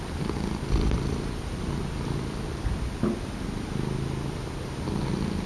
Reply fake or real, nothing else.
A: real